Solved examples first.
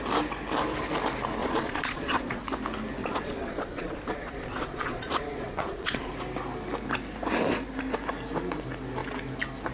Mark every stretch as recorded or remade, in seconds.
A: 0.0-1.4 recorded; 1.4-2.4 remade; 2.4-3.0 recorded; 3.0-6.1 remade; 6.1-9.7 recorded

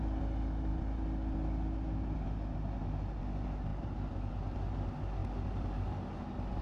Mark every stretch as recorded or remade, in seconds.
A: 0.0-3.7 recorded; 3.7-4.3 remade; 4.3-6.6 recorded

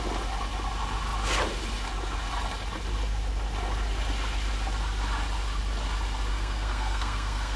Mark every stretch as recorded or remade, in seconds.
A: 0.0-6.3 recorded; 6.3-7.6 remade

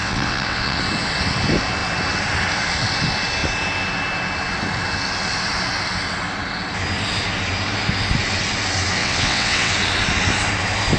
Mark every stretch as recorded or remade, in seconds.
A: 0.0-0.8 remade; 0.8-9.0 recorded; 9.0-9.7 remade; 9.7-11.0 recorded

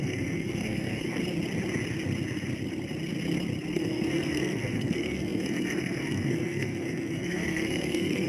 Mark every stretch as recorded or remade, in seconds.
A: 0.0-1.2 remade; 1.2-3.7 recorded; 3.7-8.3 remade

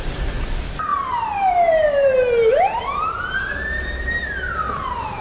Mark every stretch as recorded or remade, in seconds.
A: 0.0-5.2 remade

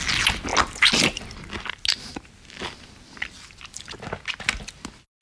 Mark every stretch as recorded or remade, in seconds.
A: 0.0-5.2 recorded